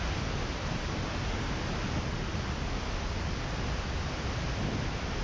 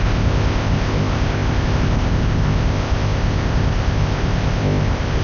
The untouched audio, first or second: first